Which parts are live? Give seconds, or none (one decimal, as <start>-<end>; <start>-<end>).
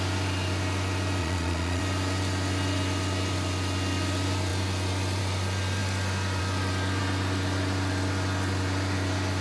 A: 0.0-1.2; 1.8-9.4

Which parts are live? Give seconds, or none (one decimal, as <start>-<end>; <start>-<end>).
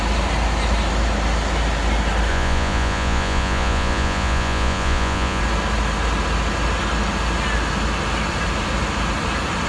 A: 0.0-2.3; 5.4-9.7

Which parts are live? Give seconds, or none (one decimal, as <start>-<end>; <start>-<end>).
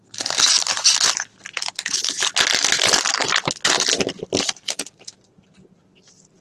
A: 0.0-6.4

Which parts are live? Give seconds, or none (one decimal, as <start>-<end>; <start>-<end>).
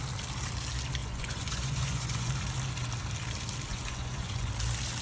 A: 0.0-1.0; 2.3-3.7; 4.5-5.0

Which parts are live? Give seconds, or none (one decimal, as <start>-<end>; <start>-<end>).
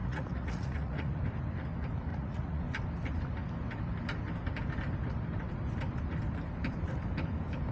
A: 1.2-2.1; 2.6-7.7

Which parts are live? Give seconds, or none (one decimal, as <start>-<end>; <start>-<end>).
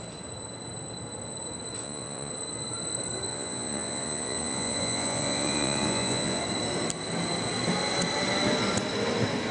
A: 0.0-1.8; 2.3-3.3; 6.4-9.5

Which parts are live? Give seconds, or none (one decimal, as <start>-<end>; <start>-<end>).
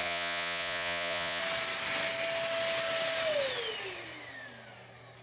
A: 1.4-5.2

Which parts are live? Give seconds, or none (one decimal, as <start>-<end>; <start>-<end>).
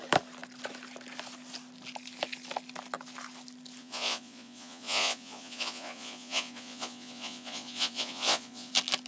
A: 0.0-3.8; 8.7-9.1